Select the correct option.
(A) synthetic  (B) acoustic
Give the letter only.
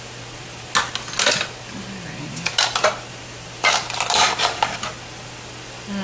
B